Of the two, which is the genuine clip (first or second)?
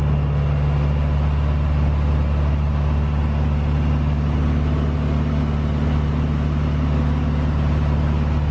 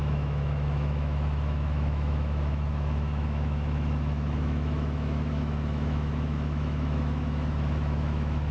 first